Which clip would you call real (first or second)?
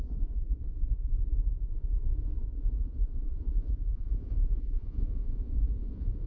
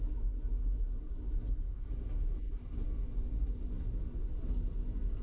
second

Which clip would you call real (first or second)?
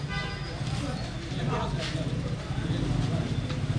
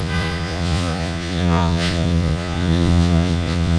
first